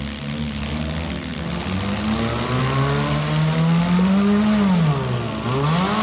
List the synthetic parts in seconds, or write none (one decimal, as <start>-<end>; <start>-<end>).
none